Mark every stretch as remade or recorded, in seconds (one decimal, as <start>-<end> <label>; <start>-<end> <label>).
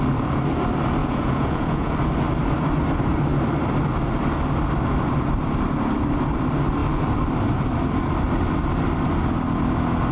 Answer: 0.0-1.0 recorded; 1.0-1.9 remade; 1.9-10.1 recorded